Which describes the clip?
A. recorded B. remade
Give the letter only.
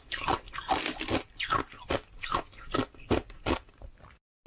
A